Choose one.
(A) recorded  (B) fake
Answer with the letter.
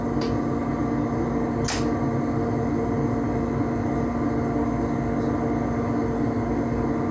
A